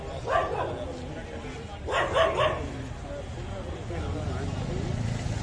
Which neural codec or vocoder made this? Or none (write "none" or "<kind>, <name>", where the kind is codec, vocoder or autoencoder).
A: none